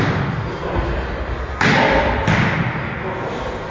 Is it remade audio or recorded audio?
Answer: recorded